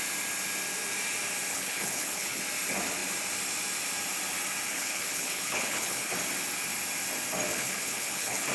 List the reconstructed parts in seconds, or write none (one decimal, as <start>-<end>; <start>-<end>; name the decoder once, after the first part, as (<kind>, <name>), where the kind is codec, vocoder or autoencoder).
1.5-2.4 (codec, HILCodec); 4.7-6.1; 7.5-8.5